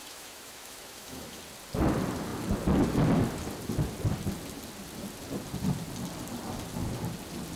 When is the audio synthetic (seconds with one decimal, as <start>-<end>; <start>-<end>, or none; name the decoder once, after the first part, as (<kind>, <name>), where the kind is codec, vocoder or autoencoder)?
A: 0.0-1.4 (autoencoder, DAC-VAE)